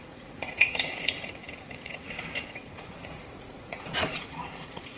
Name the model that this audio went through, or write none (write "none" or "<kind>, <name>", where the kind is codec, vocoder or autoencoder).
vocoder, Vocos